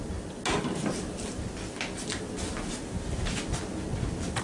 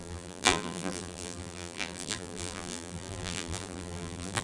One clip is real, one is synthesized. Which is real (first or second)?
first